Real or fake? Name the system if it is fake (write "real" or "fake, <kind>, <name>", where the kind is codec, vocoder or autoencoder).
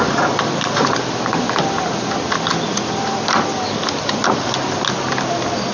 real